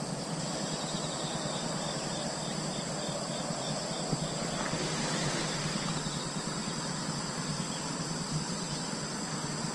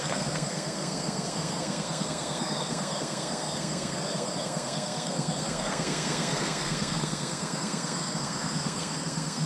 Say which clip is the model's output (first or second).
second